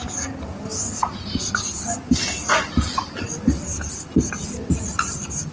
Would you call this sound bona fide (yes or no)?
yes